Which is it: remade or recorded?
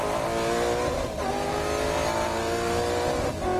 recorded